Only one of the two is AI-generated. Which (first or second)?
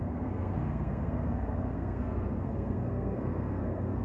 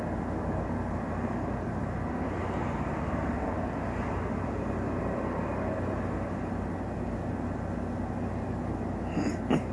first